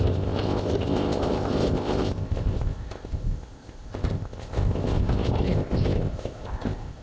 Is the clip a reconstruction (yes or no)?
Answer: yes